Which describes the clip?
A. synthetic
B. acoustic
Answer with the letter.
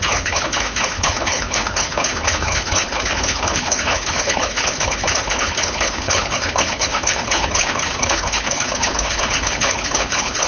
A